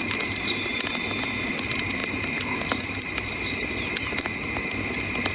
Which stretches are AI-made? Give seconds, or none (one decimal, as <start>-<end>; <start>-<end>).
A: none